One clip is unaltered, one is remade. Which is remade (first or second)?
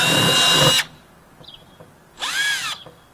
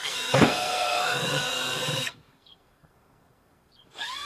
second